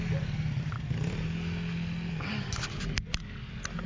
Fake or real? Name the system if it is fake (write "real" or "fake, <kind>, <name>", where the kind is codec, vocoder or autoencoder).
real